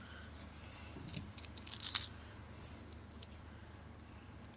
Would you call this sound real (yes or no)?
yes